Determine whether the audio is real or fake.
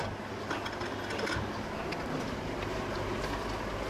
real